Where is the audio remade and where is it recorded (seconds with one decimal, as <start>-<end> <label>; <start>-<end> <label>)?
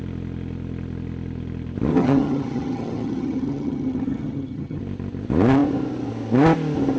0.0-1.9 recorded; 1.9-4.8 remade; 4.8-7.0 recorded